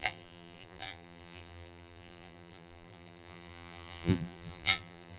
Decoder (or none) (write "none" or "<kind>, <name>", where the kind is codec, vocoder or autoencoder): vocoder, BigVGAN v2